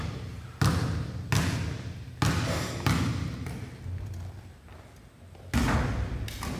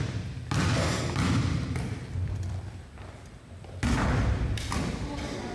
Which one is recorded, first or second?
first